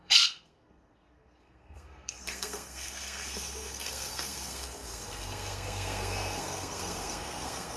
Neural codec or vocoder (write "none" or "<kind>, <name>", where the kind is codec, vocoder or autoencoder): codec, SNAC